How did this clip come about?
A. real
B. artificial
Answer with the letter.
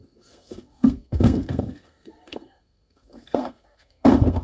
B